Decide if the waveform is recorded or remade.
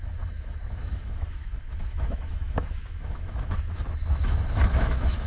remade